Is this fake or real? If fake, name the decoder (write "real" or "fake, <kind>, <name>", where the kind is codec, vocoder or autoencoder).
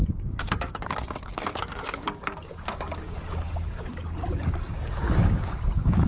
fake, codec, DAC